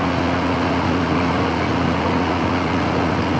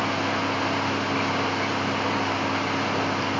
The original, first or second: second